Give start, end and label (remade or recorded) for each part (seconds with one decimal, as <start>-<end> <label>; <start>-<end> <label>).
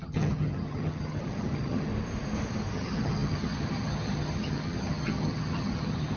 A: 0.0-1.9 remade; 1.9-2.7 recorded; 2.7-6.2 remade